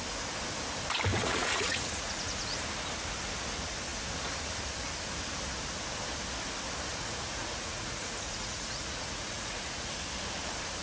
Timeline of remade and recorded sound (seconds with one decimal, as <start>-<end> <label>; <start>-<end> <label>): 0.0-1.1 recorded; 1.1-2.6 remade; 2.6-6.9 recorded; 6.9-9.9 remade; 9.9-10.8 recorded